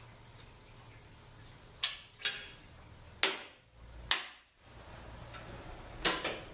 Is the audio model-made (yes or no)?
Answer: no